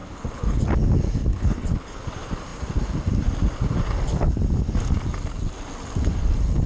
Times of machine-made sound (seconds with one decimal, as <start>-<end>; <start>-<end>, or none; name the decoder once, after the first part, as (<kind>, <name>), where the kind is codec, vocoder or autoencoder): 0.0-0.6 (codec, HILCodec); 1.3-2.0